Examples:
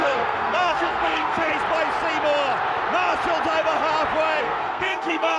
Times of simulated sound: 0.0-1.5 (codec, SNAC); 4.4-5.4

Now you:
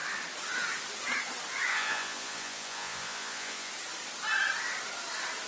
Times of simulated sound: 1.7-3.7 (vocoder, Vocos)

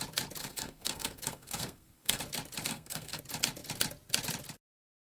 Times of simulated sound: 0.4-2.2 (codec, SNAC); 2.7-3.2

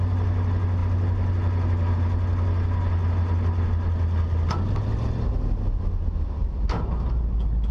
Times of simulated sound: none

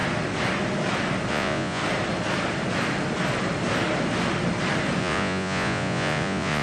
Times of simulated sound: 1.3-1.8 (vocoder, Vocos); 5.0-6.6